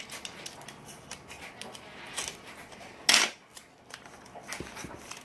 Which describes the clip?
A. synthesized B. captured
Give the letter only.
B